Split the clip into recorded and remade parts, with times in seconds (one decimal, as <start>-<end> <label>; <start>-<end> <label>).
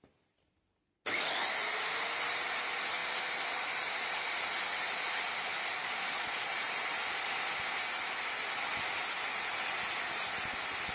0.0-5.8 recorded; 5.8-6.5 remade; 6.5-10.9 recorded